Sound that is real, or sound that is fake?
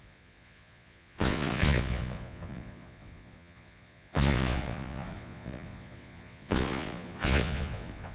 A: fake